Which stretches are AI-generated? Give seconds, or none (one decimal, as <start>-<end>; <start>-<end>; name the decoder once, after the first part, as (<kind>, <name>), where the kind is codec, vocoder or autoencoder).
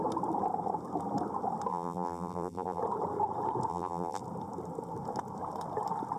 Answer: 1.7-2.8 (vocoder, BigVGAN v2); 3.7-4.2